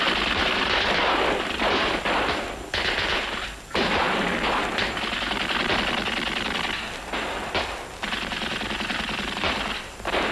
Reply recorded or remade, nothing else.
remade